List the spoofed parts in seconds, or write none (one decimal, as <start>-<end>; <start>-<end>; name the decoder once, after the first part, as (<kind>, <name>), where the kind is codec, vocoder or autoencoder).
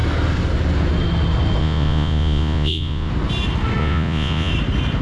1.6-3.1 (vocoder, Vocos); 3.8-4.5